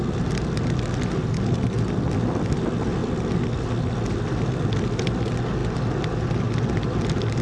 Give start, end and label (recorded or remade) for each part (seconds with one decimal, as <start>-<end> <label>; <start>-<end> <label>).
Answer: 0.0-7.4 recorded